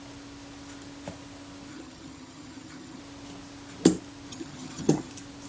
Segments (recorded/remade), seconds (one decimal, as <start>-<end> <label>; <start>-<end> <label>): 0.0-1.7 recorded; 1.7-3.0 remade; 3.0-4.3 recorded; 4.3-5.1 remade; 5.1-5.5 recorded